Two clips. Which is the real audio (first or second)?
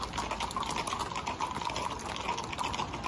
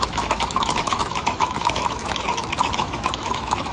first